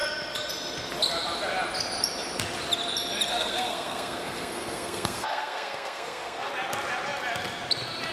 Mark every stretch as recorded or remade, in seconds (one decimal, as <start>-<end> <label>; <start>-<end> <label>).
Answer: 0.0-3.3 recorded; 3.3-6.5 remade; 6.5-8.1 recorded